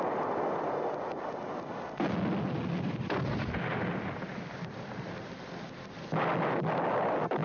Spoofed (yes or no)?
no